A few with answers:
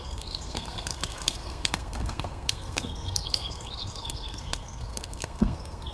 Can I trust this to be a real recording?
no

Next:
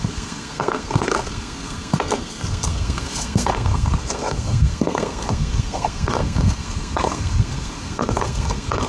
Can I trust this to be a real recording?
no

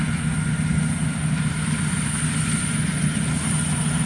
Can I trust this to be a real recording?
yes